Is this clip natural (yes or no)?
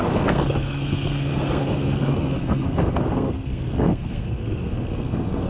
no